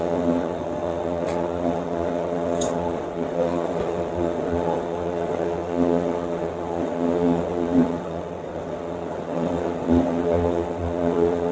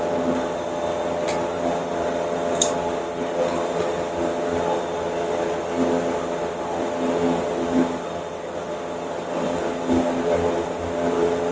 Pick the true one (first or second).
second